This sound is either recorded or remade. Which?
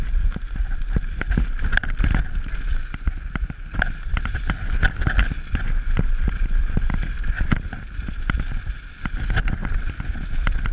recorded